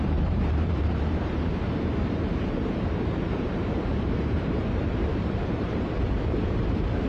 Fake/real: fake